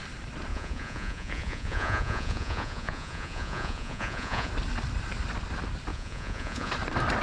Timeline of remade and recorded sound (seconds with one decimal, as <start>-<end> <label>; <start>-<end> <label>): 0.0-0.5 recorded; 0.5-4.5 remade; 4.5-5.9 recorded; 5.9-6.7 remade; 6.7-7.2 recorded